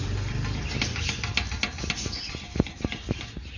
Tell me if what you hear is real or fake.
real